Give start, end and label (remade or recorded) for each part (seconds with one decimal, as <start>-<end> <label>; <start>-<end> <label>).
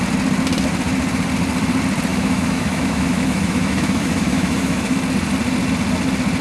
0.0-2.1 recorded; 2.1-5.0 remade; 5.0-6.4 recorded